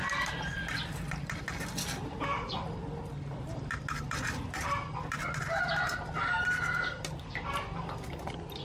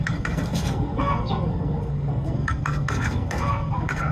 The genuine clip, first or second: first